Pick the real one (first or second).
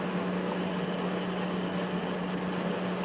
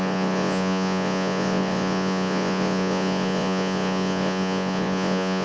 first